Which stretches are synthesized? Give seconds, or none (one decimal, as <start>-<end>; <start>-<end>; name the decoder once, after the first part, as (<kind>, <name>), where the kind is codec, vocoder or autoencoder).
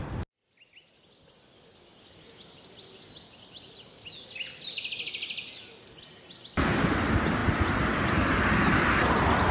none